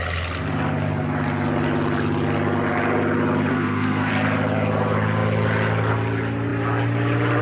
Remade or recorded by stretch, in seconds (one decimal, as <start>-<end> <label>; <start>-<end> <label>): 0.0-3.5 recorded; 3.5-4.1 remade; 4.1-7.4 recorded